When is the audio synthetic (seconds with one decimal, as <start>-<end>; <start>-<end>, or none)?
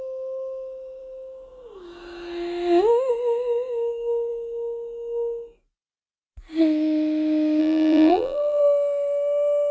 7.6-8.6